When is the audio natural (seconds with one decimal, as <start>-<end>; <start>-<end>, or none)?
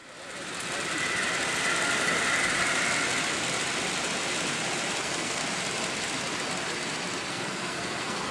0.0-5.0; 5.4-7.3